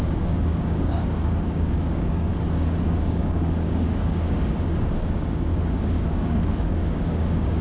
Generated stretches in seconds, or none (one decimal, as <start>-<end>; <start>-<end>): 0.0-2.3; 3.0-7.6